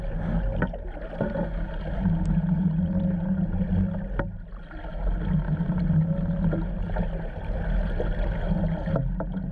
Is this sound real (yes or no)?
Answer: yes